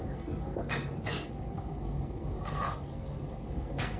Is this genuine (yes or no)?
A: no